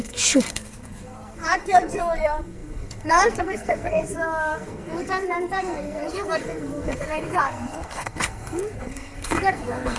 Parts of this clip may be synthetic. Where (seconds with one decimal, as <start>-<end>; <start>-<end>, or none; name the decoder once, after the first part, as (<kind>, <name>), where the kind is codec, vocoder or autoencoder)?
0.0-10.0 (codec, SNAC)